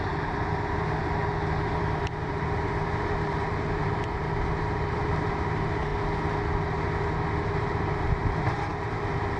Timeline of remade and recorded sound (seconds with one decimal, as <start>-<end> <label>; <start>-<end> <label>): 0.0-1.0 remade; 1.0-1.7 recorded; 1.7-5.9 remade; 5.9-7.6 recorded; 7.6-9.4 remade